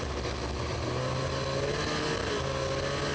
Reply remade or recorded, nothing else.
recorded